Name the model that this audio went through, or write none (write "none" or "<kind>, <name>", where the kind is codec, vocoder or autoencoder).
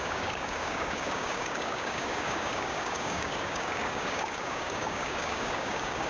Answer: codec, DAC